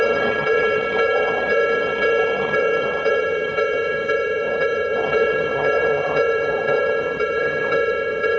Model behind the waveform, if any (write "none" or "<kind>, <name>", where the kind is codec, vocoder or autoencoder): vocoder, HiFi-GAN